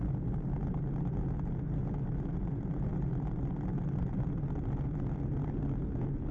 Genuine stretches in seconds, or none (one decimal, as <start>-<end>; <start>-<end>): 0.0-6.3